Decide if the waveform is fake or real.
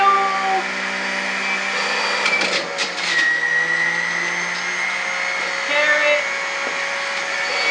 real